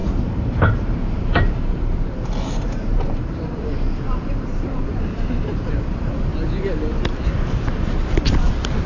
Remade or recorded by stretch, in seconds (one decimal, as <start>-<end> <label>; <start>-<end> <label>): 0.0-6.3 remade; 6.3-8.5 recorded; 8.5-8.9 remade